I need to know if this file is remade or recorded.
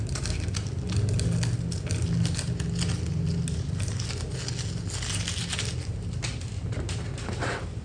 recorded